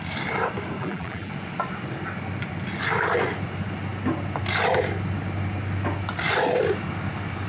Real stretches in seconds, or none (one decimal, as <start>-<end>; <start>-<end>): 0.0-0.8; 1.3-7.5